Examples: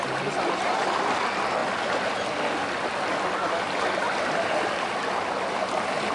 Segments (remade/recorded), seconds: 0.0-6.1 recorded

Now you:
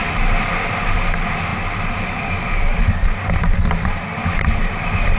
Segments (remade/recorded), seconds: 0.0-5.2 recorded

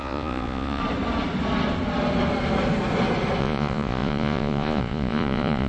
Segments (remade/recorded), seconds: 0.0-0.8 remade; 0.8-3.4 recorded; 3.4-5.7 remade

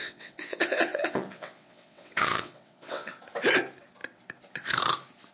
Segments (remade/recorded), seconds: 0.0-3.2 remade; 3.2-5.3 recorded

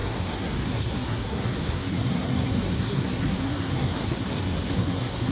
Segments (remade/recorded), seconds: 0.0-5.3 remade

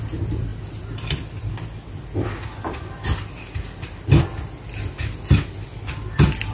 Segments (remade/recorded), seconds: 0.0-6.5 recorded

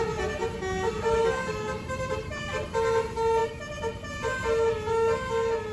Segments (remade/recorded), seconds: 0.0-5.7 recorded